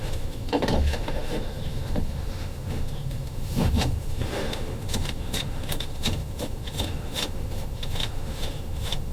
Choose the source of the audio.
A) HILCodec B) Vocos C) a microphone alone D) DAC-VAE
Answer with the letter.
D